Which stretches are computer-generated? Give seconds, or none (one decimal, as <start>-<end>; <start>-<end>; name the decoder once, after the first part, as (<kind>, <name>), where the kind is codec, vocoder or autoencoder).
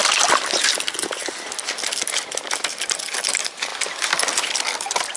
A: 3.1-3.7 (vocoder, BigVGAN v2); 4.4-5.2